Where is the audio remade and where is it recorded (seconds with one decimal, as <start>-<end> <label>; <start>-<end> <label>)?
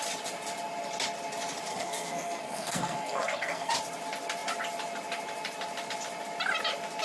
0.0-1.7 recorded; 1.7-3.7 remade; 3.7-7.0 recorded